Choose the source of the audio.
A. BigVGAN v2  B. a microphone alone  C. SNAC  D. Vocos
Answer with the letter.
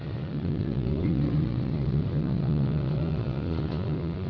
D